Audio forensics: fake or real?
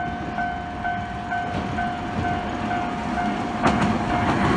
real